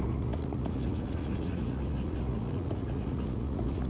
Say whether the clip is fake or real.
fake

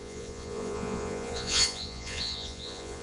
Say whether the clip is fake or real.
fake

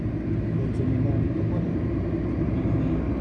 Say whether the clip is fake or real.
real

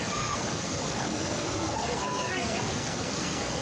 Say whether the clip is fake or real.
fake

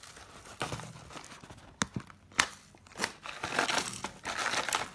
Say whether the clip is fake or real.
real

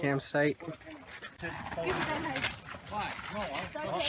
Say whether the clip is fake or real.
real